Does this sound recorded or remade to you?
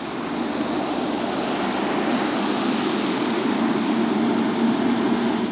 recorded